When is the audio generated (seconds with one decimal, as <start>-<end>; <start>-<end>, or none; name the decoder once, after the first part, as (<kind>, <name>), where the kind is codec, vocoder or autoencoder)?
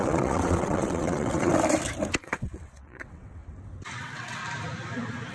0.0-1.5 (vocoder, WaveNeXt); 2.2-3.4; 4.0-4.4